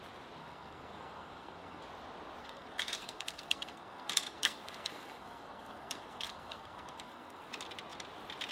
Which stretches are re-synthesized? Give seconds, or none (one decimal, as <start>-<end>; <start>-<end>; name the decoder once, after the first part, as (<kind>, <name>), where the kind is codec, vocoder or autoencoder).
0.4-1.8 (codec, SNAC); 2.4-7.5